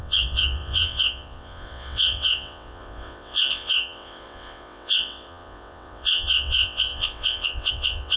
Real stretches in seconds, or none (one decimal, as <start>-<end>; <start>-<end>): none